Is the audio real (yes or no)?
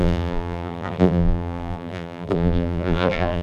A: no